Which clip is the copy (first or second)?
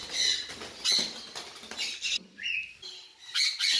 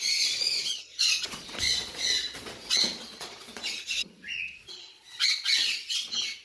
second